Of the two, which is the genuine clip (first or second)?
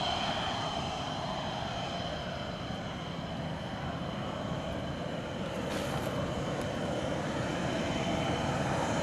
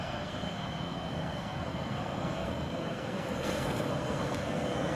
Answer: first